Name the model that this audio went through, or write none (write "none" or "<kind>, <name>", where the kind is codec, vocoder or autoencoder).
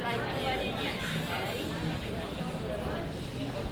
none